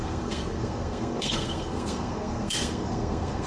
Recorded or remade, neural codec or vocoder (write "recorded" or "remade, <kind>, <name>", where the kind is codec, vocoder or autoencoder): remade, codec, SNAC